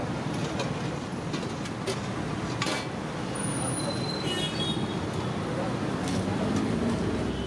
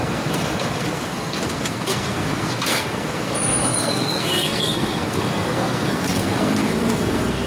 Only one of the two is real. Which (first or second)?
first